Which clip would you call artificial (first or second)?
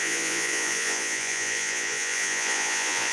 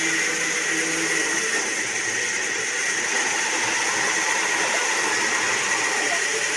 first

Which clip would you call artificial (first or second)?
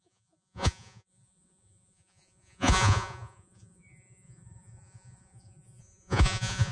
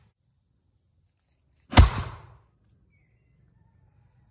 first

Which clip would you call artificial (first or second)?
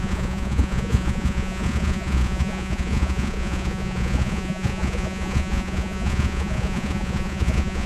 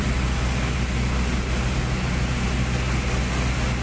first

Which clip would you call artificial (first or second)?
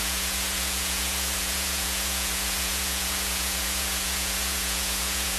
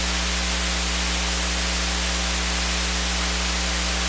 first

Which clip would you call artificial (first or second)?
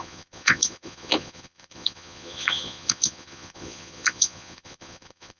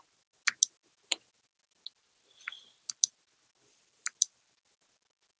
first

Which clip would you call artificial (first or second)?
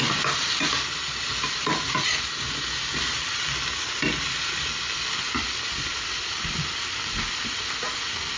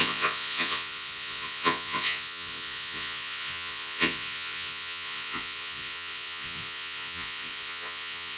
second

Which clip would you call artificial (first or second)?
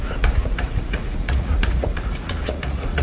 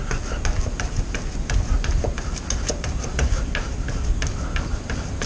first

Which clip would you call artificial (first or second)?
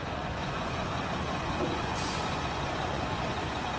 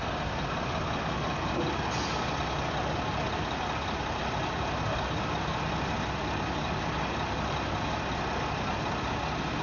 first